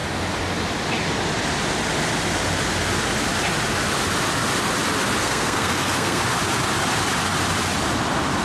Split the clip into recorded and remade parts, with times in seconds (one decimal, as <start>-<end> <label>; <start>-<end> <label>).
0.0-5.2 recorded; 5.2-6.2 remade; 6.2-8.4 recorded